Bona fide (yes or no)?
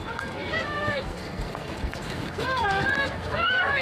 no